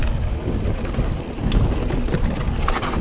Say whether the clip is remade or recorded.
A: recorded